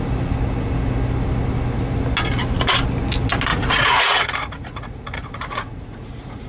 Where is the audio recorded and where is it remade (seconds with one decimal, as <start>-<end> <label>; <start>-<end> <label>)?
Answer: 0.0-3.5 recorded; 3.5-6.5 remade